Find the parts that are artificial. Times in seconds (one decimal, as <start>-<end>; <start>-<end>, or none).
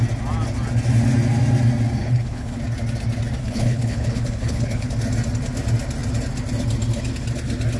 2.0-2.6; 3.4-4.9